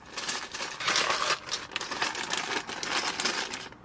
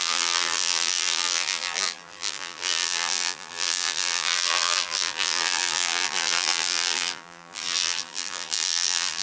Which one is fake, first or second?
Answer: second